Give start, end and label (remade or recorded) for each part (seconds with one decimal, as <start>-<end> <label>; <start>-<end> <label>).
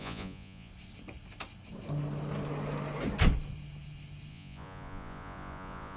0.0-0.7 remade; 0.7-4.3 recorded; 4.3-6.0 remade